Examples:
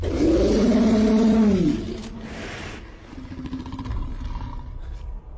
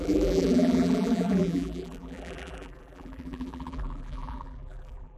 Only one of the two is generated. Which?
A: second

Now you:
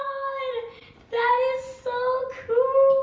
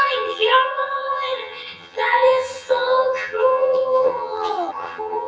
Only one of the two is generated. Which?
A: second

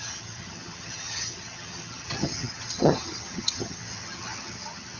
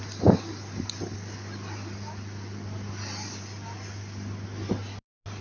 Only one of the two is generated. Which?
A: first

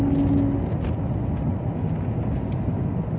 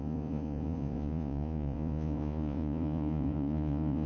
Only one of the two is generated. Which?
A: second